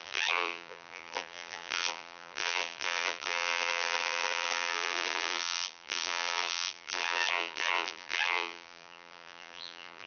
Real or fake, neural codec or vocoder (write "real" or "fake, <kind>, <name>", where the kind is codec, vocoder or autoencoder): fake, vocoder, BigVGAN v2